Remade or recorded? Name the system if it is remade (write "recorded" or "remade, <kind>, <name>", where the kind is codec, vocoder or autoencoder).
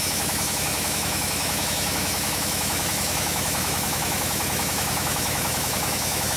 remade, autoencoder, DAC-VAE